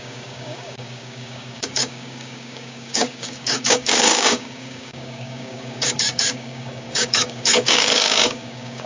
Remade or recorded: remade